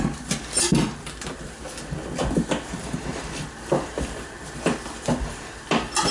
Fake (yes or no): yes